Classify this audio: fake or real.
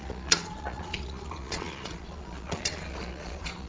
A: fake